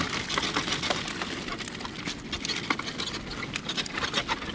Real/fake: real